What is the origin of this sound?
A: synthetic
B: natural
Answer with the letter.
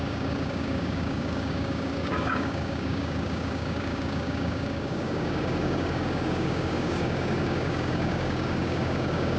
A